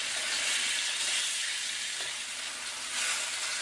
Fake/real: real